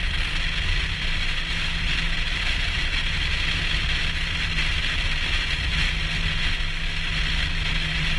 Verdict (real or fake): real